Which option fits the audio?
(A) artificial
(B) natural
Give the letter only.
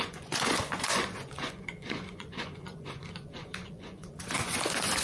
A